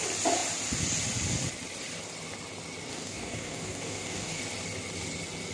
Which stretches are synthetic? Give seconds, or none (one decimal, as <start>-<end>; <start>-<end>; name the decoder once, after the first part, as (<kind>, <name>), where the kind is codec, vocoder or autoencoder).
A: 2.9-4.4 (codec, DAC)